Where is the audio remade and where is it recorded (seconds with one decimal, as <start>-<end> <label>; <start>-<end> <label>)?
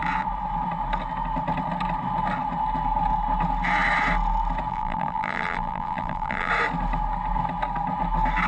0.0-4.7 recorded; 4.7-6.5 remade; 6.5-8.5 recorded